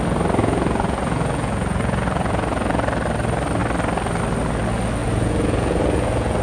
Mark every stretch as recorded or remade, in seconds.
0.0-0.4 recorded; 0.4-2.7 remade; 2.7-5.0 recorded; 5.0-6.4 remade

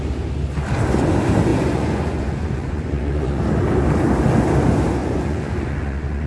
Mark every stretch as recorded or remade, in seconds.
0.0-1.5 recorded; 1.5-3.4 remade; 3.4-5.0 recorded; 5.0-6.3 remade

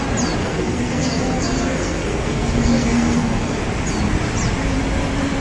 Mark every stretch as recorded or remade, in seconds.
0.0-0.4 recorded; 0.4-3.6 remade; 3.6-5.4 recorded

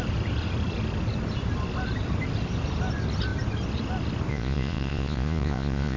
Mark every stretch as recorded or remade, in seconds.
0.0-4.3 recorded; 4.3-6.0 remade